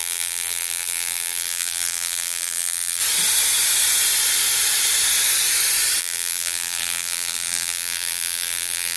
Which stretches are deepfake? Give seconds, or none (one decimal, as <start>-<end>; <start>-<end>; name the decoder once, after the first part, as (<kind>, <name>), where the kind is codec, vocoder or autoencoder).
0.0-3.0 (vocoder, BigVGAN v2); 6.0-9.0